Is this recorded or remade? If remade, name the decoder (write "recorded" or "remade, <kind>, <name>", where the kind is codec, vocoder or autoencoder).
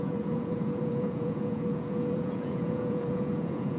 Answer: remade, vocoder, Vocos